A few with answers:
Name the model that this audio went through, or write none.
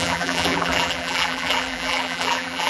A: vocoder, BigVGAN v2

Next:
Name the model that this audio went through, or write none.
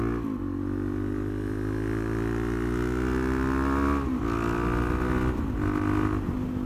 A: none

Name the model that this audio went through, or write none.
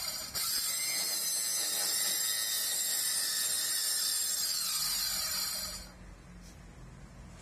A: none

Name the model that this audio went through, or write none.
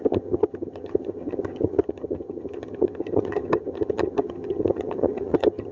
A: vocoder, HiFi-GAN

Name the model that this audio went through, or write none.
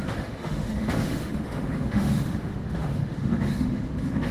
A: autoencoder, DAC-VAE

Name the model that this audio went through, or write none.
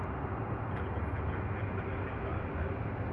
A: none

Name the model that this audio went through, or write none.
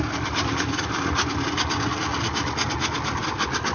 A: none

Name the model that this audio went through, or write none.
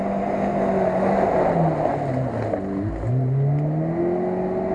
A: none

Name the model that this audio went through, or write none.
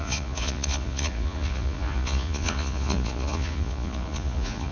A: vocoder, Vocos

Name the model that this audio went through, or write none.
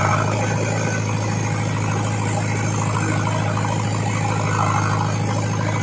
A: none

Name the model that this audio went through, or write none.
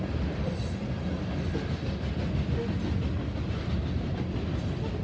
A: none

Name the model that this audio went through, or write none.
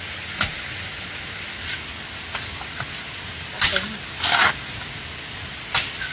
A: none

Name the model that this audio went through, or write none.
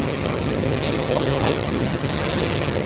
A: vocoder, HiFi-GAN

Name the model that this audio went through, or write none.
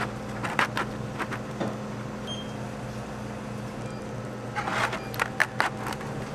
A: none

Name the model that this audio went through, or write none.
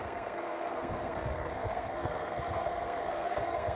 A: codec, SNAC